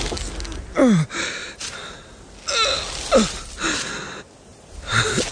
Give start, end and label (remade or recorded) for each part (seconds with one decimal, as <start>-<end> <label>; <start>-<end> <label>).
0.0-1.4 recorded; 1.4-2.2 remade; 2.2-4.5 recorded; 4.5-5.3 remade